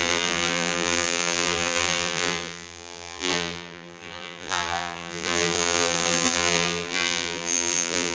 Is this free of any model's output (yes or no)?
no